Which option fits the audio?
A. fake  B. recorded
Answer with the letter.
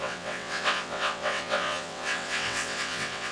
A